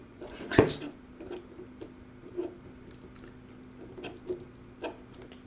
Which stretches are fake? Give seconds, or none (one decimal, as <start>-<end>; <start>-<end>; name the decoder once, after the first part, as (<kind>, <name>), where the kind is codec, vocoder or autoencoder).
0.0-0.6 (vocoder, Vocos)

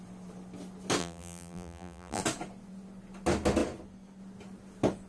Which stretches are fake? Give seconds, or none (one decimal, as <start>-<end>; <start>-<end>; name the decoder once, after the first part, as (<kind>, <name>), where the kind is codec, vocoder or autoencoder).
1.0-2.2 (vocoder, BigVGAN v2)

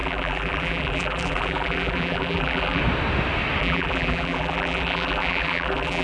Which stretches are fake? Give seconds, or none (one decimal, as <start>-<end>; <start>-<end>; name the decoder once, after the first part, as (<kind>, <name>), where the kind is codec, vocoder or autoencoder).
0.0-2.8 (vocoder, BigVGAN v2); 3.6-6.0

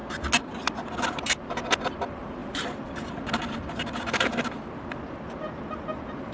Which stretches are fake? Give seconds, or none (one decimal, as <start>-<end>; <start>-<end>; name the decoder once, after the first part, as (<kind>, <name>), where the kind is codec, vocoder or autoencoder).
none

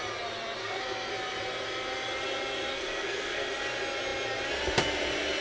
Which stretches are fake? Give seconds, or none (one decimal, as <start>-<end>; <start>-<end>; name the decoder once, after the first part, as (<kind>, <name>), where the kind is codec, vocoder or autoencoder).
0.6-1.1 (codec, SNAC); 2.7-3.5

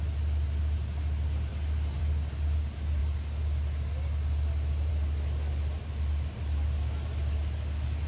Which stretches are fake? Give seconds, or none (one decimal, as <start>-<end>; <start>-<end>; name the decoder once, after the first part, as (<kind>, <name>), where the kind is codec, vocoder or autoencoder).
none